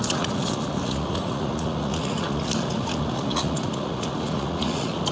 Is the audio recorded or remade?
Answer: remade